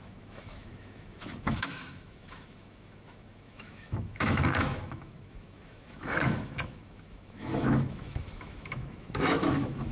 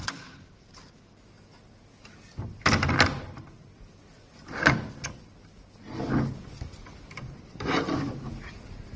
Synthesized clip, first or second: first